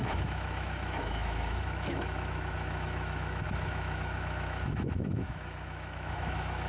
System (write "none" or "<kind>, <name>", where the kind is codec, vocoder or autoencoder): autoencoder, DAC-VAE